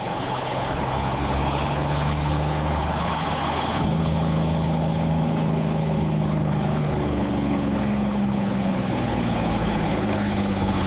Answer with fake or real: fake